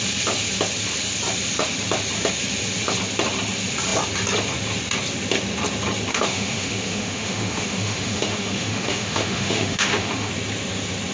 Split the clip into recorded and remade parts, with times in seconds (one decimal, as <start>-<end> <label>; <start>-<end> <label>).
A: 0.0-6.1 recorded; 6.1-10.3 remade; 10.3-11.1 recorded